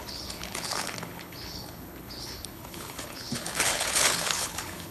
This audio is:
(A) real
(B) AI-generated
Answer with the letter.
B